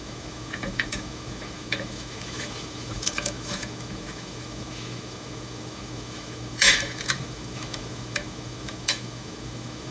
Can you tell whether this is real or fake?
fake